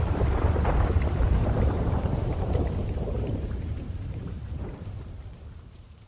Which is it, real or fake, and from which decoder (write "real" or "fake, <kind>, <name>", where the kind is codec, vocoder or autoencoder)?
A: fake, vocoder, BigVGAN v2